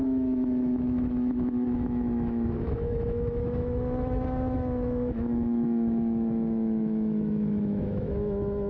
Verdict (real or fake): fake